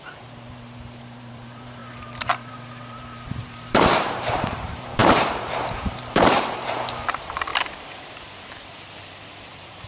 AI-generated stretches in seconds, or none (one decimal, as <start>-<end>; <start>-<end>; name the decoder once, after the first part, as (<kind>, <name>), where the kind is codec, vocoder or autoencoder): 0.0-7.5 (vocoder, BigVGAN v2); 9.5-9.9